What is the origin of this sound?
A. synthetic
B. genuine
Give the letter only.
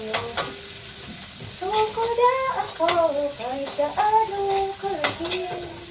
B